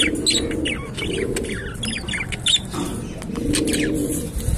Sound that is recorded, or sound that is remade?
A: recorded